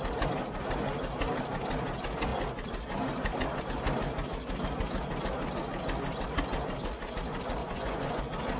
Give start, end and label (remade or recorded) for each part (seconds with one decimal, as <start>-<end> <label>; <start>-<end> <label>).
0.0-7.6 recorded; 7.6-8.2 remade; 8.2-8.6 recorded